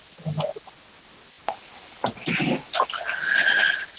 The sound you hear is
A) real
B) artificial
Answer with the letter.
A